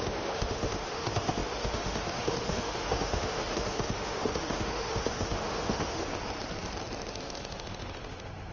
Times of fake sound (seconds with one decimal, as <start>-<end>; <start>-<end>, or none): 0.0-6.1; 7.1-8.5

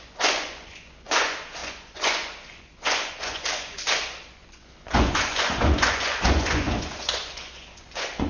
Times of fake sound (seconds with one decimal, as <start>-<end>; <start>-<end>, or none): 0.0-8.3

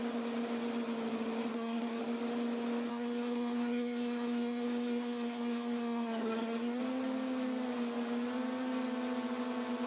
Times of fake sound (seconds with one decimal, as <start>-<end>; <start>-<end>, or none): 1.5-2.0; 2.9-6.8